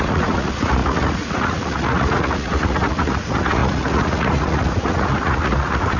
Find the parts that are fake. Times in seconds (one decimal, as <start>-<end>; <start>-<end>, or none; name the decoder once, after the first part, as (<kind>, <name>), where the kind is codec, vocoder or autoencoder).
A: 0.0-6.0 (vocoder, Vocos)